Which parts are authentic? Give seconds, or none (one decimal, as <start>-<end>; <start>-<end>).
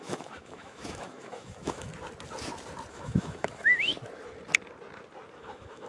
1.9-2.9; 3.9-5.4